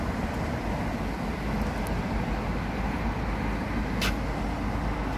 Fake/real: real